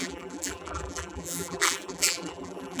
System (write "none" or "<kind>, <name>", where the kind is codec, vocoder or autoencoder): vocoder, BigVGAN v2